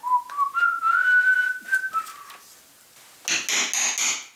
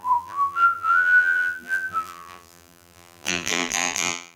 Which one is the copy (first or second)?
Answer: second